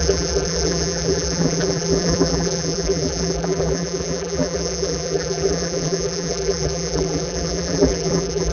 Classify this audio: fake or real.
fake